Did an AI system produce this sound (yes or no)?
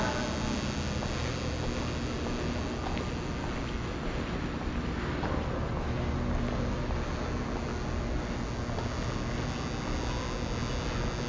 no